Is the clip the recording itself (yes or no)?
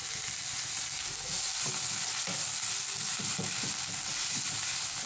yes